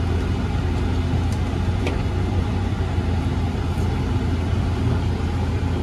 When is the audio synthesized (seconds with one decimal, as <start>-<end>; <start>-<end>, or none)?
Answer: 1.7-2.8